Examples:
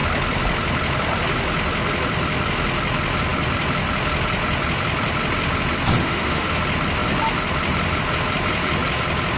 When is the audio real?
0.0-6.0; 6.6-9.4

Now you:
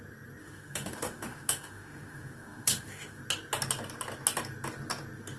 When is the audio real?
0.0-0.4; 3.2-5.4